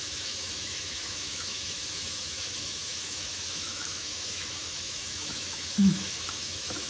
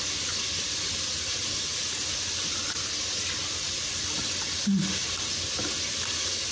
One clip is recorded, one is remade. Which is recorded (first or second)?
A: second